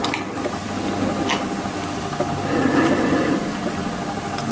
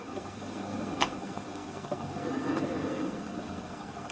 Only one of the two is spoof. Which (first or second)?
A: second